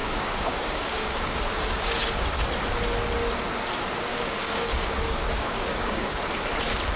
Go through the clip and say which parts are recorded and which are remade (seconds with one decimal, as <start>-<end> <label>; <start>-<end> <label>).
0.0-1.9 remade; 1.9-4.1 recorded; 4.1-6.2 remade; 6.2-7.0 recorded